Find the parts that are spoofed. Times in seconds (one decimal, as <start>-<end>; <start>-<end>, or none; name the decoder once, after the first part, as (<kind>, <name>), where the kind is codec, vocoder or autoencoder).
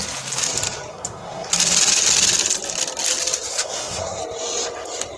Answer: 0.9-1.5 (codec, SNAC); 3.5-4.2